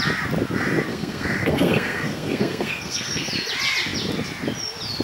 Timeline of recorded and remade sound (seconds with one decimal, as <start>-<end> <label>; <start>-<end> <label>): 0.0-0.9 recorded; 0.9-3.3 remade; 3.3-5.0 recorded